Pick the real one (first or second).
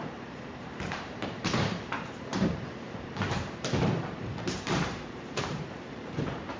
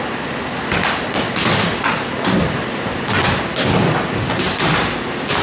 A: second